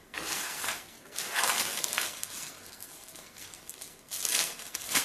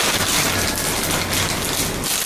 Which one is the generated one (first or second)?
first